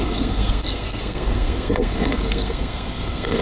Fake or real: fake